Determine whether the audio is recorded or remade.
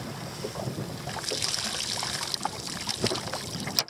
recorded